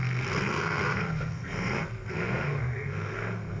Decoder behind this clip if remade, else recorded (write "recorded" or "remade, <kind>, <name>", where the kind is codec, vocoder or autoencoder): remade, codec, SNAC